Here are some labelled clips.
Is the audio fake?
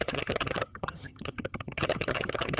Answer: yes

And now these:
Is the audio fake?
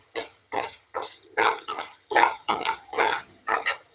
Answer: yes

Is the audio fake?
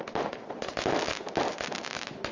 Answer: no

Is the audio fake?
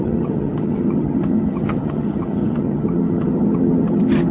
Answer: yes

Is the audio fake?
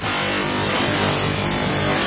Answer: no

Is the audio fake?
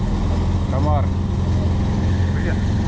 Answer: no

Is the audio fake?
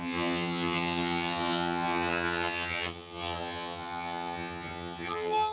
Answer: yes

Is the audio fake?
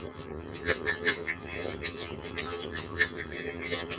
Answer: yes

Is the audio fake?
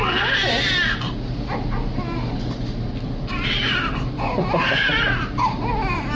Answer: no